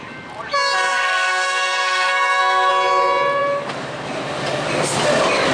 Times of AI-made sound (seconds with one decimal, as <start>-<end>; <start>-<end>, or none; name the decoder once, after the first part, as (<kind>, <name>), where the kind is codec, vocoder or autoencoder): 0.9-2.7 (codec, SNAC)